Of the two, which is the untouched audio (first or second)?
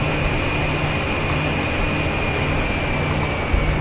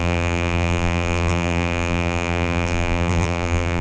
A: first